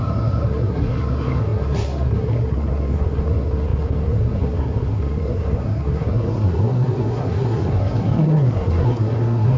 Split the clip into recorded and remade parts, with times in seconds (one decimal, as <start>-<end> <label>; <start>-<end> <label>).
0.0-9.6 remade